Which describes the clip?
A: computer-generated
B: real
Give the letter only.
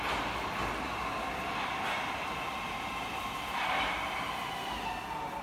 B